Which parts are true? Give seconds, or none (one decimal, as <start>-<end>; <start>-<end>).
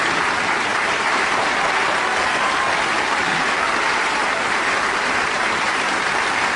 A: 0.0-0.7; 2.6-4.2; 6.1-6.6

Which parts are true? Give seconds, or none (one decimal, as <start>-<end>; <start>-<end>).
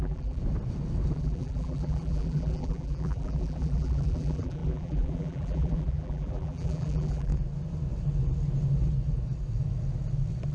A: 0.4-1.1; 7.3-10.5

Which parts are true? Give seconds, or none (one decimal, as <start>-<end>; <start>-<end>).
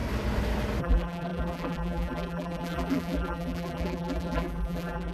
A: 0.0-0.8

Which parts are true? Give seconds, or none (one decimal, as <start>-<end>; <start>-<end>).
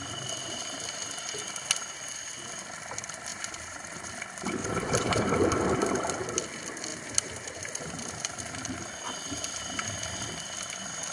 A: 0.0-3.3; 4.1-4.6; 5.2-6.9; 8.4-11.1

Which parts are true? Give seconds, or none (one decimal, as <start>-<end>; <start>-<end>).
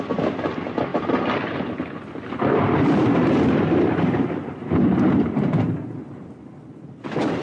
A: 0.0-0.9; 1.8-2.5; 5.5-7.4